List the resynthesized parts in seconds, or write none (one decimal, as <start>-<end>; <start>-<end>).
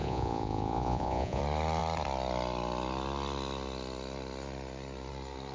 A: 0.0-1.4